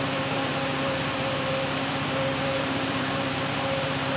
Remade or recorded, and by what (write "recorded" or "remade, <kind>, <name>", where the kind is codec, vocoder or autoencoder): remade, vocoder, BigVGAN v2